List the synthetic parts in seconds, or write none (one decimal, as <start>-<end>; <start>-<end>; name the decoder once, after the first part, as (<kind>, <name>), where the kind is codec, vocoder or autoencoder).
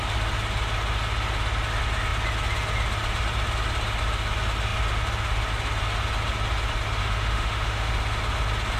7.0-7.9 (autoencoder, DAC-VAE)